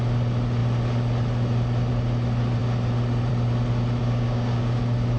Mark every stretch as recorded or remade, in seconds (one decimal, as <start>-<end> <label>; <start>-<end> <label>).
0.0-4.0 recorded; 4.0-4.8 remade; 4.8-5.2 recorded